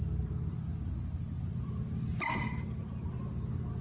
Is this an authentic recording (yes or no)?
yes